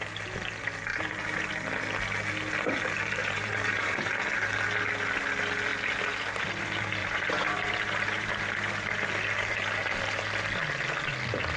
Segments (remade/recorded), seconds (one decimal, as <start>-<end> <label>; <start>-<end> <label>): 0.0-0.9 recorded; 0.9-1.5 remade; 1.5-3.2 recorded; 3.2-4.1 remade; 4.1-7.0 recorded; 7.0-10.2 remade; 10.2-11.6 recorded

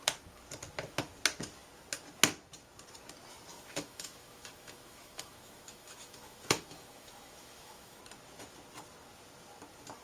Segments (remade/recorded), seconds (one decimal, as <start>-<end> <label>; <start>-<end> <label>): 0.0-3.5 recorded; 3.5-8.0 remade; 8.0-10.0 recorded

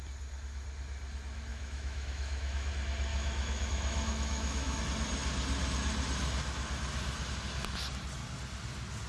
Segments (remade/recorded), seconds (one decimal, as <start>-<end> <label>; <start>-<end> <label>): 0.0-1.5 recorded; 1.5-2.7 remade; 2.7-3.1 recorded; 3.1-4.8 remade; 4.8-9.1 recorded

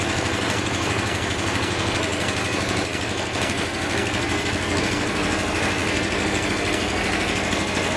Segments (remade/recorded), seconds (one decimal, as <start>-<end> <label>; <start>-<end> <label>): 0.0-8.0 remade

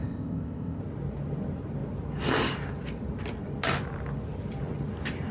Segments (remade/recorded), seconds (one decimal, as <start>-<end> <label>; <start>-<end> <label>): 0.0-0.8 remade; 0.8-5.3 recorded

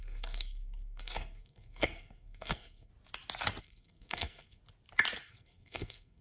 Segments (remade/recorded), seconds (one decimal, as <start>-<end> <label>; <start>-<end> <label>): 0.0-2.9 remade; 2.9-3.6 recorded; 3.6-4.6 remade; 4.6-5.3 recorded; 5.3-6.2 remade